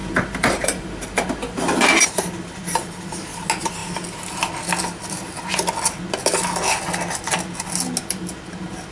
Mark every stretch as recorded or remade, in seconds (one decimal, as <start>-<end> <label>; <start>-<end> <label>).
0.0-2.9 remade; 2.9-8.9 recorded

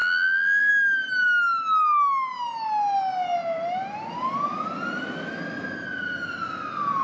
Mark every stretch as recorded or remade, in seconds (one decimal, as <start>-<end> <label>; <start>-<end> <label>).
0.0-0.7 remade; 0.7-7.0 recorded

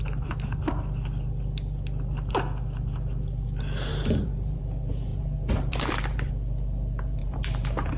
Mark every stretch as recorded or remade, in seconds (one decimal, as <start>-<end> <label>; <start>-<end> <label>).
0.0-3.9 recorded; 3.9-4.6 remade; 4.6-5.1 recorded; 5.1-6.3 remade; 6.3-7.2 recorded; 7.2-8.0 remade

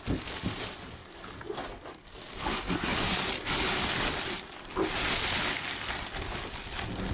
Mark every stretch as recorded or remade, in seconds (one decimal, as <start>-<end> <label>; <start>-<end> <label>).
0.0-1.0 recorded; 1.0-2.3 remade; 2.3-2.9 recorded; 2.9-3.7 remade; 3.7-7.1 recorded

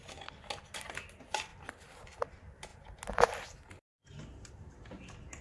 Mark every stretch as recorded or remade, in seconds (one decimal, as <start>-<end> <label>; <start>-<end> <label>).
0.0-1.5 recorded; 1.5-2.0 remade; 2.0-5.4 recorded

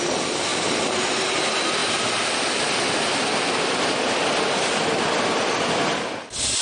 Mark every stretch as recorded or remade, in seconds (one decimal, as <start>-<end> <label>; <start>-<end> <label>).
0.0-6.6 recorded